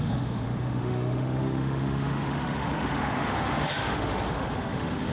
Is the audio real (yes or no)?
no